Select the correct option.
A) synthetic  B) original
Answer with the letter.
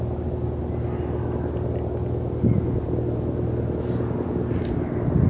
B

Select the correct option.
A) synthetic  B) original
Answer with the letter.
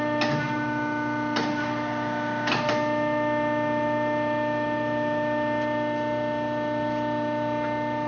B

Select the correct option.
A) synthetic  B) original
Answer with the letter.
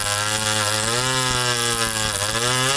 B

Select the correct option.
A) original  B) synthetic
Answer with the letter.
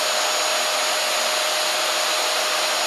A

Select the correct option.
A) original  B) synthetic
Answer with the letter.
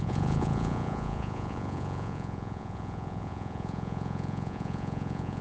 B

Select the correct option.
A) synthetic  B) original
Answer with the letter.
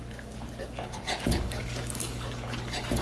A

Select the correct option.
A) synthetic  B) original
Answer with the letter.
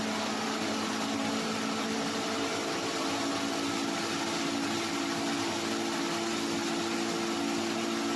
B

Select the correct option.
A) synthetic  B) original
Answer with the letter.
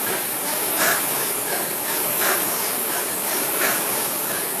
A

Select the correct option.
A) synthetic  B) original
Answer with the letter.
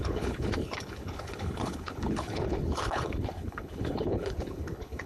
A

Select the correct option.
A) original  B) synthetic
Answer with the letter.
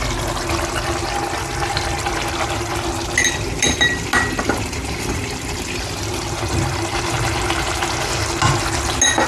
A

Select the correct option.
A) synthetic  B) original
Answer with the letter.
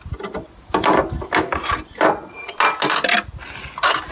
B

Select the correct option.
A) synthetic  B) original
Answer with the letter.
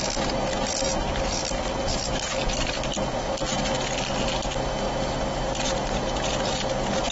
B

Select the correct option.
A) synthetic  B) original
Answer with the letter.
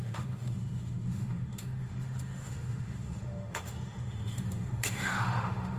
A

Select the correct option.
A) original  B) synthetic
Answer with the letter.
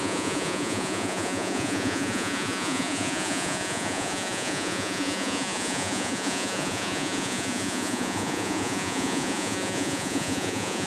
B